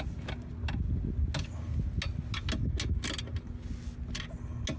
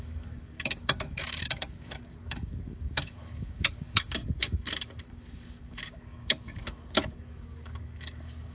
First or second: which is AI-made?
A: second